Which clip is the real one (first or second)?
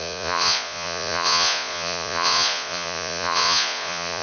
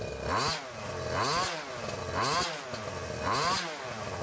second